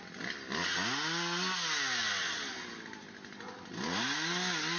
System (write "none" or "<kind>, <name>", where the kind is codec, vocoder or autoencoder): none